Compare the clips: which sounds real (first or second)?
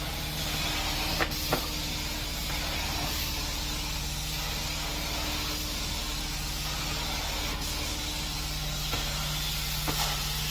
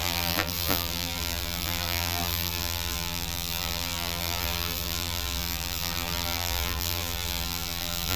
first